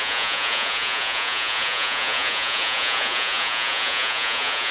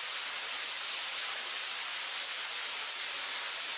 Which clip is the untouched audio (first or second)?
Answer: second